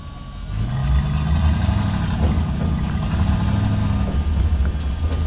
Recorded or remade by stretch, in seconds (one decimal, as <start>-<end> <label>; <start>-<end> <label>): 0.0-5.3 recorded